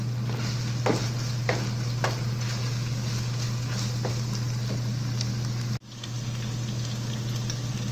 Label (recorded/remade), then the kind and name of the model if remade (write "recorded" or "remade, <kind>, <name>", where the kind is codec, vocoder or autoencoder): recorded